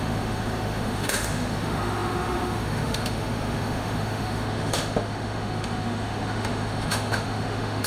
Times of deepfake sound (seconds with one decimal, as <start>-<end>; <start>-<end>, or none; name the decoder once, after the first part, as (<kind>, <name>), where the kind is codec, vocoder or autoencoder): 0.0-7.9 (autoencoder, DAC-VAE)